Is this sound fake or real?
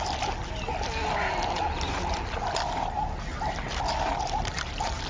real